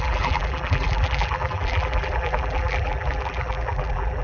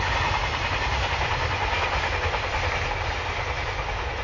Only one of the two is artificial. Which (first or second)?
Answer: first